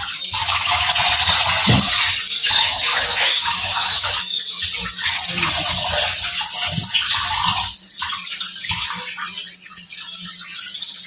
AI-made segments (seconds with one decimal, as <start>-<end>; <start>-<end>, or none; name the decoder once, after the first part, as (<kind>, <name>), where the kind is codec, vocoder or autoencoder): 0.4-0.9 (autoencoder, DAC-VAE); 2.4-4.4